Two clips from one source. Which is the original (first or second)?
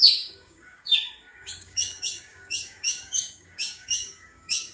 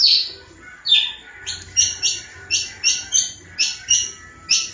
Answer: second